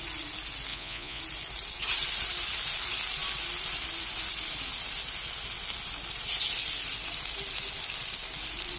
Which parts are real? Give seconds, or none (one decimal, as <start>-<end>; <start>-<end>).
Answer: 0.0-0.7; 1.2-8.8